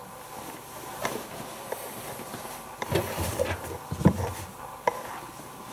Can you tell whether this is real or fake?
real